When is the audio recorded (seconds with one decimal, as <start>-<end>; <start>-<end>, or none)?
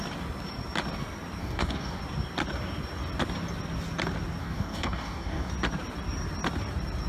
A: 0.0-1.4; 2.0-4.4; 5.5-7.1